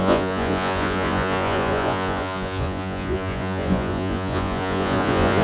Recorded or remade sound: remade